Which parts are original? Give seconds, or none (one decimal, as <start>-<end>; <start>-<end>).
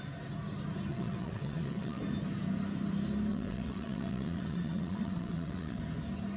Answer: 0.0-0.9; 2.0-3.3; 5.8-6.4